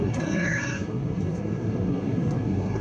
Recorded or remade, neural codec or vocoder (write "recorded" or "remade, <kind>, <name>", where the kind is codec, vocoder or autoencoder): remade, codec, SNAC